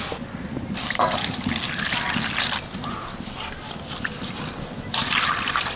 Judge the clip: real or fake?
real